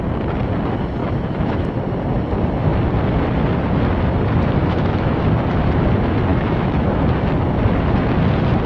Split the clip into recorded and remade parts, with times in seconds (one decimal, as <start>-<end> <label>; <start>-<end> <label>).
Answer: 0.0-1.0 recorded; 1.0-1.7 remade; 1.7-4.6 recorded; 4.6-5.2 remade; 5.2-6.3 recorded; 6.3-6.9 remade; 6.9-8.7 recorded